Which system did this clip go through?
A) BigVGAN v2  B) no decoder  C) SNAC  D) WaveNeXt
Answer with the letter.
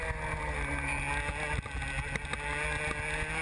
B